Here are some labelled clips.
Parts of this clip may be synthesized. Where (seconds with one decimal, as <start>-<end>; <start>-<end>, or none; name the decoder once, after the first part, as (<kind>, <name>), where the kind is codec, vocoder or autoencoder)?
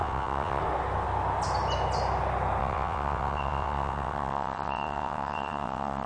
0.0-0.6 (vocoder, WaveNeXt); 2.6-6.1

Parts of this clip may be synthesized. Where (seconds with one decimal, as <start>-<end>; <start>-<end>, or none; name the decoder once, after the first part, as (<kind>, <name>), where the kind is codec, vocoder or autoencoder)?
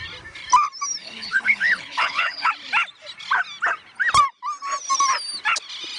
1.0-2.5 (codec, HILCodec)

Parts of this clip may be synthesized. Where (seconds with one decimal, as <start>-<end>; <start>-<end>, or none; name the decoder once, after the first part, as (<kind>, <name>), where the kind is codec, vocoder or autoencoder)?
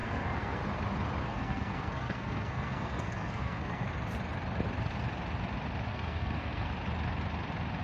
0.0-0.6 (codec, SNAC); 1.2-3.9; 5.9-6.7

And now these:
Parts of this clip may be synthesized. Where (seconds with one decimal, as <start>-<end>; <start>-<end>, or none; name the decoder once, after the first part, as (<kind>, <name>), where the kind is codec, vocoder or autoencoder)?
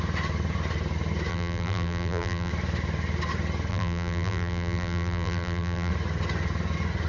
1.3-2.5 (vocoder, BigVGAN v2); 3.7-5.9